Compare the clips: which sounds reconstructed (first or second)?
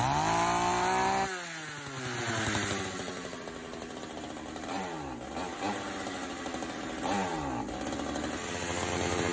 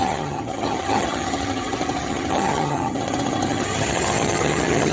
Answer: second